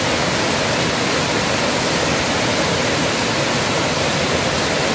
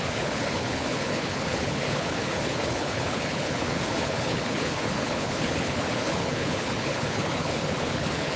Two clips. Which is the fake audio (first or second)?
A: second